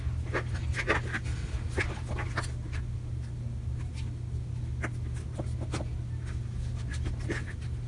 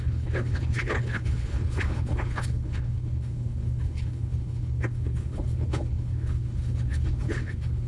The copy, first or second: second